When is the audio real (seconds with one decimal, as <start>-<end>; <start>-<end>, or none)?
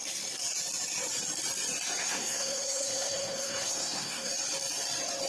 0.0-2.0; 4.3-5.3